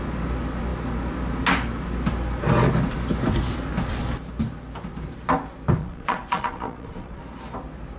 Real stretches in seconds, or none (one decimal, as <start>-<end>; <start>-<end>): 0.0-5.8; 7.2-8.0